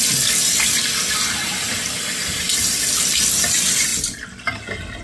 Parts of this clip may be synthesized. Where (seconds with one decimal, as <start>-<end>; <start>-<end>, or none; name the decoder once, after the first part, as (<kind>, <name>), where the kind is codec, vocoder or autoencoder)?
1.0-2.9 (vocoder, BigVGAN v2); 3.9-4.6